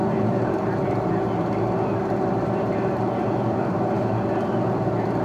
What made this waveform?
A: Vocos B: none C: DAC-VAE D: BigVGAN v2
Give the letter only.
B